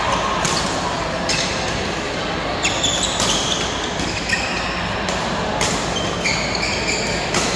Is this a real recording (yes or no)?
yes